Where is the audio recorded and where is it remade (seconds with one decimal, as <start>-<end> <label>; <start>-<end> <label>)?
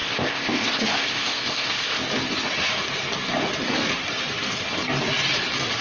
0.0-2.0 remade; 2.0-5.8 recorded